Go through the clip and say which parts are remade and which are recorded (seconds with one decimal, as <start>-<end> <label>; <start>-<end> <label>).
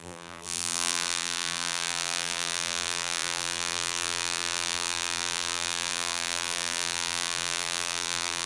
0.0-8.5 remade